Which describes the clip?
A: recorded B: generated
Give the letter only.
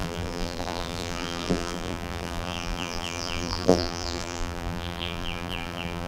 B